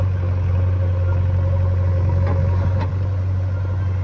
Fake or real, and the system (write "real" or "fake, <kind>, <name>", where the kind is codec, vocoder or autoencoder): real